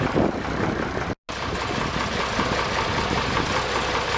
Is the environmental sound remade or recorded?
recorded